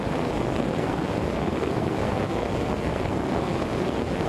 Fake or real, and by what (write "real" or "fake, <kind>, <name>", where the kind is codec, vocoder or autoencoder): fake, codec, SNAC